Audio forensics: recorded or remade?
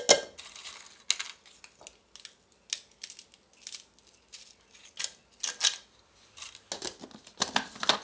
recorded